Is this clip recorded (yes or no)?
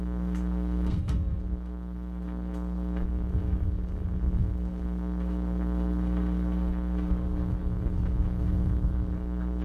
no